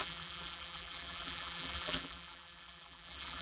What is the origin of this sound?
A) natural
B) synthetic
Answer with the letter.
B